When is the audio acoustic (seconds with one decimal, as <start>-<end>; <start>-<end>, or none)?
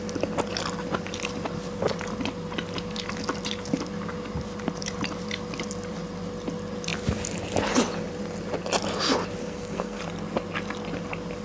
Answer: 0.0-9.4; 10.0-11.4